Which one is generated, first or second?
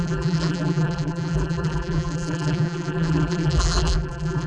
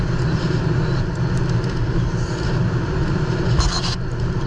first